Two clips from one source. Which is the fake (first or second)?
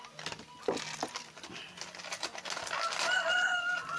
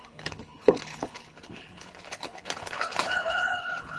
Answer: second